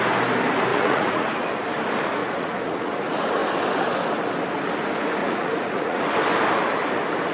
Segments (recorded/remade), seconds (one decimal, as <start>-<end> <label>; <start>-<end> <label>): 0.0-0.7 recorded; 0.7-1.3 remade; 1.3-2.2 recorded; 2.2-2.9 remade; 2.9-5.2 recorded; 5.2-6.0 remade; 6.0-7.3 recorded